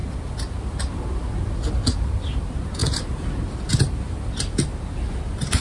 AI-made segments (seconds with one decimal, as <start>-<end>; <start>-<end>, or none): none